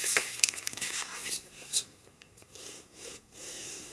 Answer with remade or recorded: remade